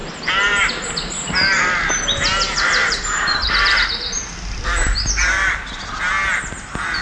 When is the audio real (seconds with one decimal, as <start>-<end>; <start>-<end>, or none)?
0.0-2.8; 4.2-7.0

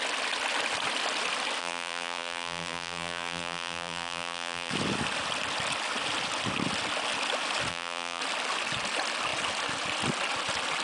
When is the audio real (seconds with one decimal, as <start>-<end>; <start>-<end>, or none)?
0.0-1.6; 4.7-7.7; 8.2-10.8

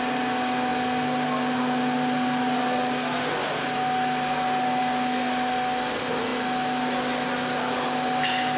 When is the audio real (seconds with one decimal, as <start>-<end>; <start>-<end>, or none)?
0.0-8.6